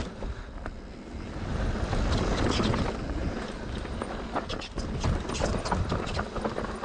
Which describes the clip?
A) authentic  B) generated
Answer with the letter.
A